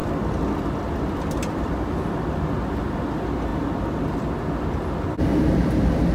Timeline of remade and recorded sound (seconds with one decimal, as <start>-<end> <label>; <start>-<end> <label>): 0.0-1.9 remade; 1.9-6.1 recorded